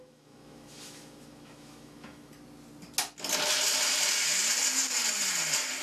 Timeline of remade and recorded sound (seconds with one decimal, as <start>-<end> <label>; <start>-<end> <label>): 0.0-2.3 remade; 2.3-5.8 recorded